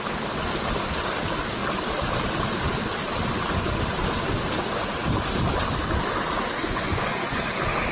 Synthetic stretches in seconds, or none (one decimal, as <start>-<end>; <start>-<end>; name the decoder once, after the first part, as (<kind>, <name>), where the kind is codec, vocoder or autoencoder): 6.6-7.4 (vocoder, Vocos)